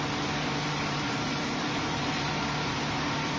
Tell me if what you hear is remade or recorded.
remade